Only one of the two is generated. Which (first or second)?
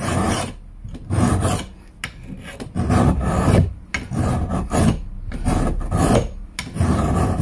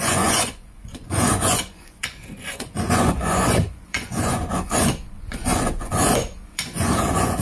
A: second